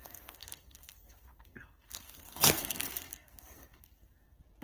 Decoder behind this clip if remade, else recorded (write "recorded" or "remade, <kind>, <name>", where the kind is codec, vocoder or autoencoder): remade, codec, SNAC